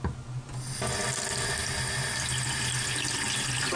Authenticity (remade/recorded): recorded